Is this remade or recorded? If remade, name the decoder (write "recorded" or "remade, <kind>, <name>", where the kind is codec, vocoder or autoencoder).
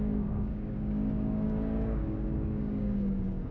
remade, codec, DAC